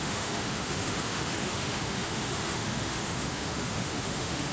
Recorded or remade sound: remade